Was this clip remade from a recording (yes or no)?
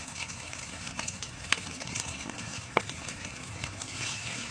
yes